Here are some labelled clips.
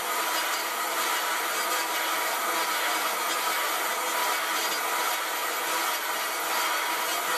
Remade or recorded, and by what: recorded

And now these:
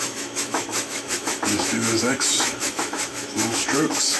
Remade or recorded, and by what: remade, autoencoder, DAC-VAE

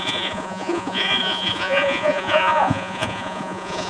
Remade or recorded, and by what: remade, vocoder, Vocos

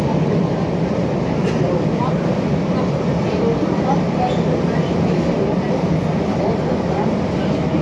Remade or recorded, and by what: recorded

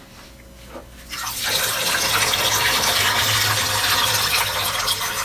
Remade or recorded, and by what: recorded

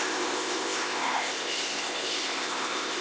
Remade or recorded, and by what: remade, codec, ZipCodec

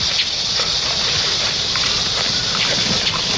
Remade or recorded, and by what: remade, vocoder, BigVGAN v2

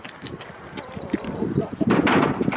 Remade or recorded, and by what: recorded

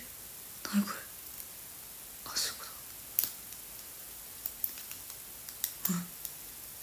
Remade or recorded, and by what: recorded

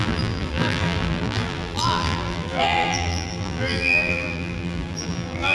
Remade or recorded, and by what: remade, vocoder, BigVGAN v2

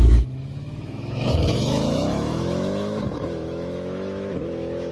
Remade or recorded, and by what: remade, autoencoder, DAC-VAE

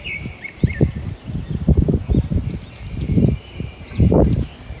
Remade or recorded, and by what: recorded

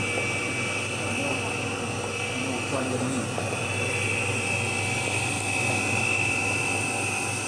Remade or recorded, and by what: recorded